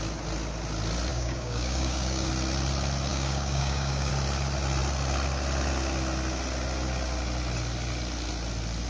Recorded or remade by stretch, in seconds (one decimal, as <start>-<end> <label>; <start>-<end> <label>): 0.0-1.1 recorded; 1.1-2.3 remade; 2.3-3.1 recorded; 3.1-4.1 remade; 4.1-8.9 recorded